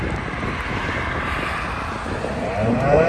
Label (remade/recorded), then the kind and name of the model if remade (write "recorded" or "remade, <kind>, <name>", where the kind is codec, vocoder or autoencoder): remade, vocoder, BigVGAN v2